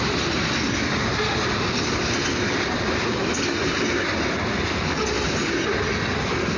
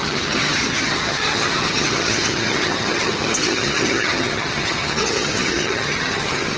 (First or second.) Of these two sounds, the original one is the first